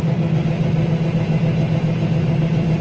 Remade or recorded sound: recorded